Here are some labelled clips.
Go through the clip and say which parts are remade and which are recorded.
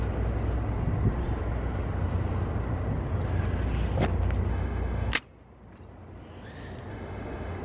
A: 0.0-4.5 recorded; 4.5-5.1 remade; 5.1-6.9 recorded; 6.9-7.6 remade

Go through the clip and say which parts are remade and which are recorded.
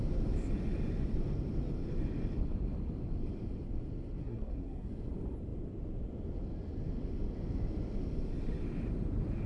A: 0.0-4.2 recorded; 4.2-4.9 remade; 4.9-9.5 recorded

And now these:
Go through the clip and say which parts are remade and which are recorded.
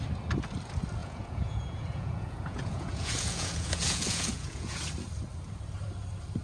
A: 0.0-1.0 recorded; 1.0-4.8 remade; 4.8-6.4 recorded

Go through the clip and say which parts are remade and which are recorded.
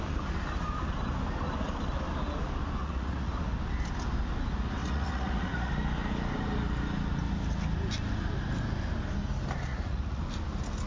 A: 0.0-2.8 recorded; 2.8-3.3 remade; 3.3-4.8 recorded; 4.8-5.7 remade; 5.7-9.7 recorded; 9.7-10.2 remade; 10.2-10.9 recorded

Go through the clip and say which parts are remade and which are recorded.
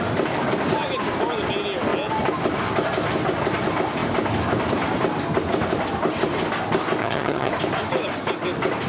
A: 0.0-7.0 recorded; 7.0-7.5 remade; 7.5-8.9 recorded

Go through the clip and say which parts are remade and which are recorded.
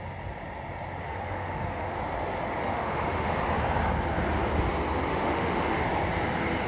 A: 0.0-1.0 recorded; 1.0-2.0 remade; 2.0-2.6 recorded; 2.6-3.3 remade; 3.3-5.1 recorded; 5.1-5.8 remade; 5.8-6.7 recorded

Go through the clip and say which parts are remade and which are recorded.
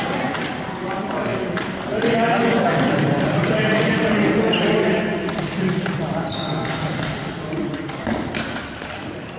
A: 0.0-9.4 recorded